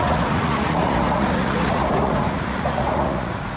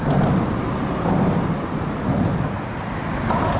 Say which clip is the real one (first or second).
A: second